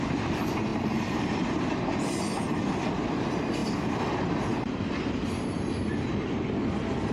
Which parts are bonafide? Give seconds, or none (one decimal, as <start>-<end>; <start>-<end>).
0.0-7.1